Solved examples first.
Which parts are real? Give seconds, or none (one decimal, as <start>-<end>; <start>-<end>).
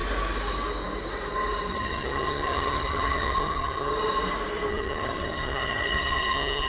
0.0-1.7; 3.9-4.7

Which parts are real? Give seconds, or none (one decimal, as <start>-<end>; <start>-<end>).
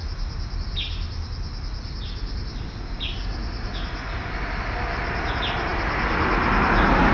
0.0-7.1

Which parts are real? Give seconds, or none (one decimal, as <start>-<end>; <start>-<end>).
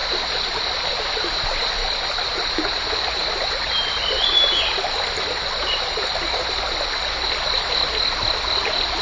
0.0-9.0